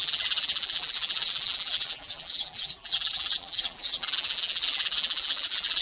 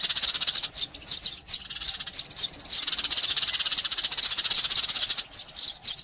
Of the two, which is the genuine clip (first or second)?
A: second